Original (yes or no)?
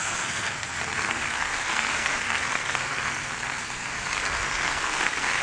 no